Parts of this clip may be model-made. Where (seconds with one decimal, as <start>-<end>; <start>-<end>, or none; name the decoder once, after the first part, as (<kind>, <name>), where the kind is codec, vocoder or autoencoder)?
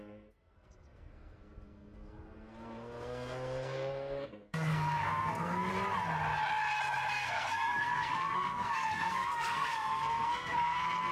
0.0-5.7 (codec, SNAC); 7.1-11.1